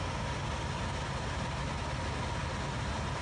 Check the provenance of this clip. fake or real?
real